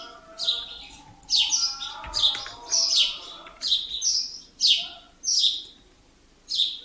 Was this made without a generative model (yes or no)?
yes